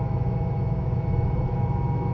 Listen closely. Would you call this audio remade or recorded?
remade